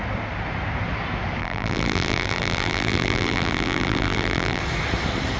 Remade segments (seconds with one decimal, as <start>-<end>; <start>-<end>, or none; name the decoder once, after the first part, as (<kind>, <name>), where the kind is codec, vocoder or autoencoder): 1.4-4.6 (vocoder, BigVGAN v2)